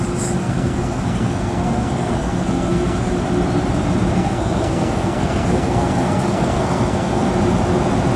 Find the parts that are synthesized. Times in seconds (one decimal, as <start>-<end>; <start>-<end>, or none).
0.4-3.1; 4.1-7.3